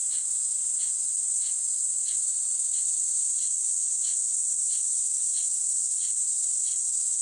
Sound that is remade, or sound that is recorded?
recorded